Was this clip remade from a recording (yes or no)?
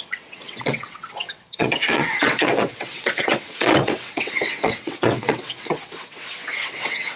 yes